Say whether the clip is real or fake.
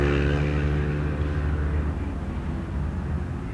real